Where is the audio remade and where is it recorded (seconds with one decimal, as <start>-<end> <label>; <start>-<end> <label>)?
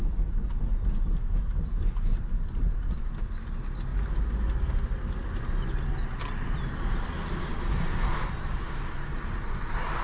0.0-7.5 recorded; 7.5-8.7 remade; 8.7-10.0 recorded